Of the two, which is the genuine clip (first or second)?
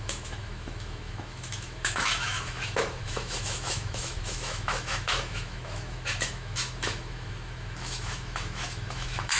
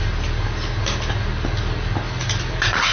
second